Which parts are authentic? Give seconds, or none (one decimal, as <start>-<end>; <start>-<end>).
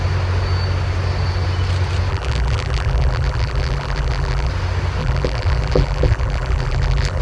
0.0-2.1; 4.5-5.0